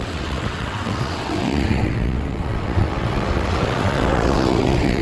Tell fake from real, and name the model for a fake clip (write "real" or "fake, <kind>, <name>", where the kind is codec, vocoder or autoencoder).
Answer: fake, vocoder, WaveNeXt